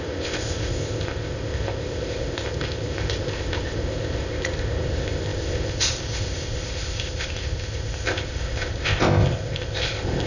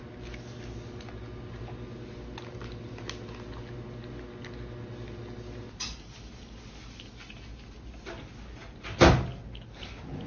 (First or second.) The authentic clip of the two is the second